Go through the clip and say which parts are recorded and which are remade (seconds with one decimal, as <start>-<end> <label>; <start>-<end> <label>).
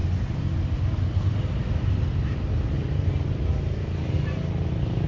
0.0-5.1 recorded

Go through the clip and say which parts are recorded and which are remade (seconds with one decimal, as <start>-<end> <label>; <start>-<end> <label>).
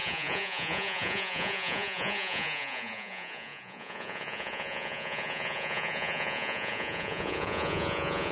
0.0-8.3 remade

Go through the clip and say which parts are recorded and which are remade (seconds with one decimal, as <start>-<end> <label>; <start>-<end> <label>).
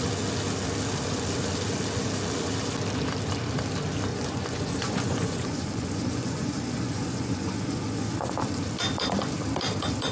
0.0-4.1 recorded; 4.1-8.3 remade; 8.3-10.1 recorded